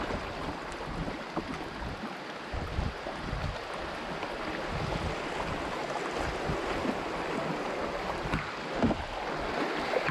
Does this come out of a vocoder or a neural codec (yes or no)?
no